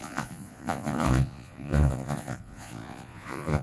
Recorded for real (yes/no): no